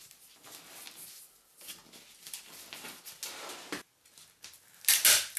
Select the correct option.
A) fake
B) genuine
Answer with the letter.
B